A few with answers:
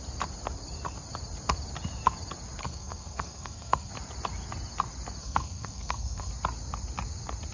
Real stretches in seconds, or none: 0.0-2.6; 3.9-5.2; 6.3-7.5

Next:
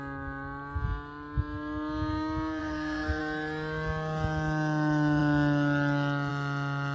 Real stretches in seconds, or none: 0.0-2.6; 3.2-6.9

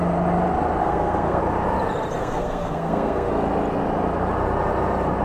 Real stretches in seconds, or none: 0.0-0.8; 1.4-2.2; 3.3-5.2

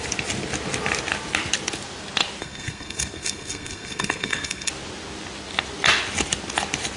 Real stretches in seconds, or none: 0.0-2.4; 4.7-7.0

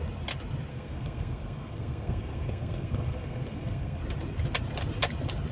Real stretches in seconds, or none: 0.0-0.7; 4.0-5.5

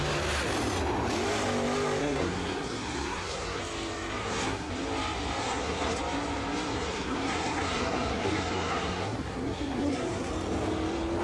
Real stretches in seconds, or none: 0.0-2.0; 3.6-4.2; 4.7-5.4; 6.0-6.7; 10.3-11.2

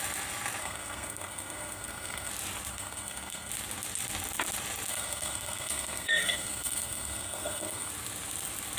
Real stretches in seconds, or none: 0.0-0.6; 2.3-2.7; 3.5-4.9; 7.9-8.8